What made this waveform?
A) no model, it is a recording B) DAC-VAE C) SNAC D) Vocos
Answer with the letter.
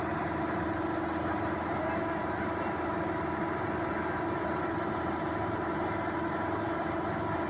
A